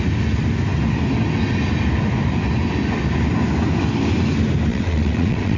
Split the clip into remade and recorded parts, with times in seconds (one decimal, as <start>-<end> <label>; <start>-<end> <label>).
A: 0.0-4.7 recorded; 4.7-5.6 remade